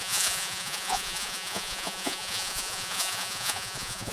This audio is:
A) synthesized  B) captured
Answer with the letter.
A